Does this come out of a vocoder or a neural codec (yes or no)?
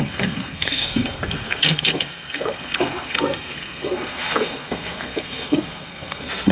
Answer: yes